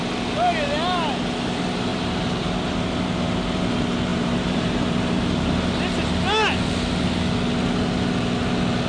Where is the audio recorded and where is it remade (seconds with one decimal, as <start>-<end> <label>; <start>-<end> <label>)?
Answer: 0.0-1.9 recorded; 1.9-2.4 remade; 2.4-4.1 recorded; 4.1-5.2 remade; 5.2-8.9 recorded